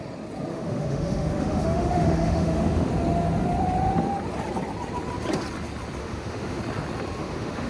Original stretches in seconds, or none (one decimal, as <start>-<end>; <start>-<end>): 0.0-0.5; 2.9-6.0; 6.6-7.2